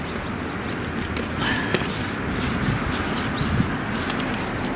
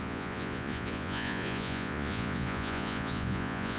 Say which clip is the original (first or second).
first